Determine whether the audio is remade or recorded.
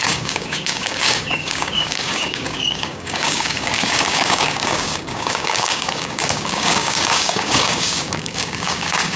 remade